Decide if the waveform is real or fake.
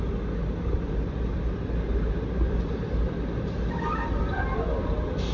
real